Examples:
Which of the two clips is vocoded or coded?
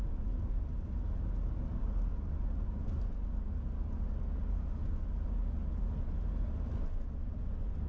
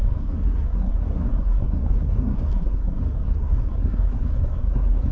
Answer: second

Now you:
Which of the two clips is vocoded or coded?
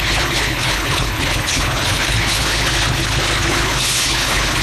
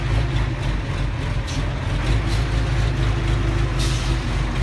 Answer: first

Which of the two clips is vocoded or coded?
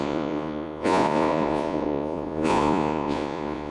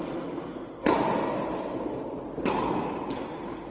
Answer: first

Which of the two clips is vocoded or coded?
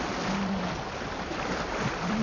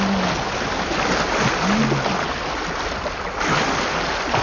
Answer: first